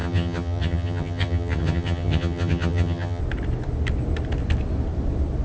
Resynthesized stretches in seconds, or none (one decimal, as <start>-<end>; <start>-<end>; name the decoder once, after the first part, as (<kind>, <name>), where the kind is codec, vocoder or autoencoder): 0.0-3.2 (vocoder, HiFi-GAN)

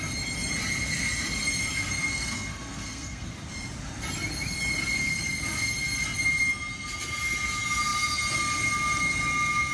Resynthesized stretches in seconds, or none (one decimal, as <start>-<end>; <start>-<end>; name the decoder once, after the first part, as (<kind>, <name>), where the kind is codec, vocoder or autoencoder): 2.1-3.3 (codec, SNAC)

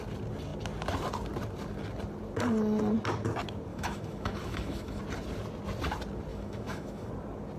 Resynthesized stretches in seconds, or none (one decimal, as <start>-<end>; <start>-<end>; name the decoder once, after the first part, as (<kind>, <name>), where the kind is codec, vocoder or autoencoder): 3.7-5.0 (autoencoder, DAC-VAE); 6.3-7.1

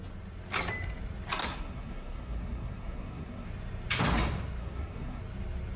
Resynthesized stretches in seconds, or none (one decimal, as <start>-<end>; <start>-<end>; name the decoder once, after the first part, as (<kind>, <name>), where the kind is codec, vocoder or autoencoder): 1.4-3.5 (codec, SNAC); 4.6-5.2